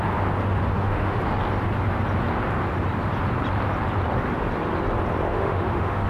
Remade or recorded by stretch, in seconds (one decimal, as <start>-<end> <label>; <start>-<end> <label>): 0.0-0.7 recorded; 0.7-1.2 remade; 1.2-5.3 recorded; 5.3-6.1 remade